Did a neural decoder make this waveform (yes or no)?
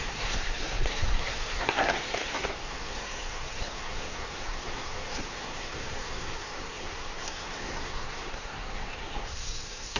yes